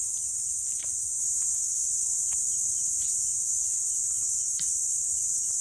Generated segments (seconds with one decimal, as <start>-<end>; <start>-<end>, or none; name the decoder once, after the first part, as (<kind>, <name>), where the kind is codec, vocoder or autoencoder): 0.0-3.7 (vocoder, BigVGAN v2); 4.3-5.6